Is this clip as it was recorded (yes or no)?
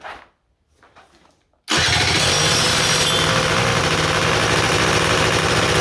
yes